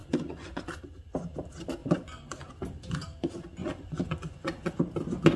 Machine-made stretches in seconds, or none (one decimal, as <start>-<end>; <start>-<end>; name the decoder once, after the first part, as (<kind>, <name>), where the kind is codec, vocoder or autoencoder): 0.0-0.8 (vocoder, Vocos); 1.8-2.5; 3.6-4.8